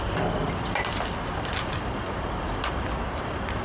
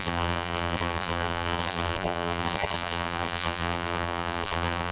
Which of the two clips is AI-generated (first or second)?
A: second